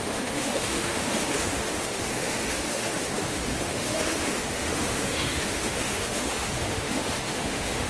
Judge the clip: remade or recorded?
remade